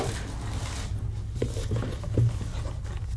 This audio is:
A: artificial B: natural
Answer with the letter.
B